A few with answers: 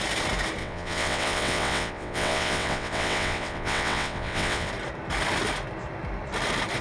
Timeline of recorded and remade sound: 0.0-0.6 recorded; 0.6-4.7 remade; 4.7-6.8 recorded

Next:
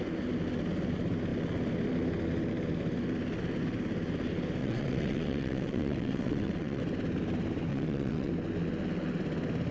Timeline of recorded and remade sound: 0.0-4.6 recorded; 4.6-6.8 remade; 6.8-7.7 recorded; 7.7-8.3 remade; 8.3-9.7 recorded

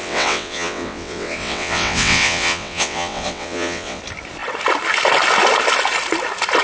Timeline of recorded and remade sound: 0.0-4.0 remade; 4.0-6.6 recorded

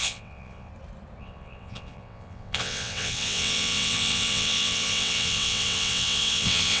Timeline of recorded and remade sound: 0.0-0.7 remade; 0.7-1.2 recorded; 1.2-6.8 remade

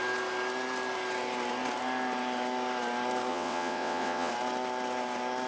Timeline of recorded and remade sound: 0.0-3.3 recorded; 3.3-4.3 remade; 4.3-5.5 recorded